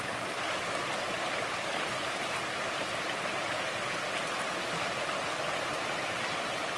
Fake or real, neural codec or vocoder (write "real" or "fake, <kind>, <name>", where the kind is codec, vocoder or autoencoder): real